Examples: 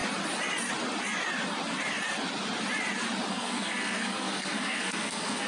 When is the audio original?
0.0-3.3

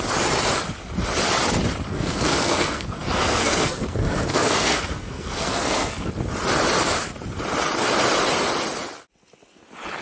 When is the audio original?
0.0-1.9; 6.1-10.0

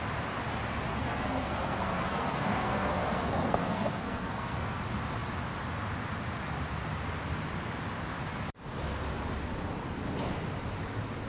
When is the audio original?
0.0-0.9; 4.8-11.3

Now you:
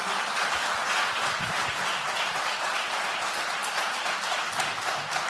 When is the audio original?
0.0-5.3